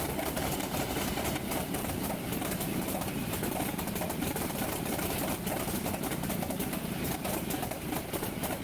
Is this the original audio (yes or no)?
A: no